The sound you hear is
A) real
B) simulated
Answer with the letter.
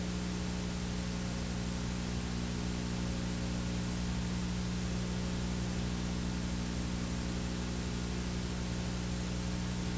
A